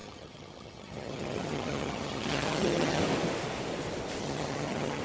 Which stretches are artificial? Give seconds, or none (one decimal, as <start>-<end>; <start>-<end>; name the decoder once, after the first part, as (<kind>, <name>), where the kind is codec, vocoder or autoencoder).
0.0-3.0 (vocoder, HiFi-GAN); 4.2-5.0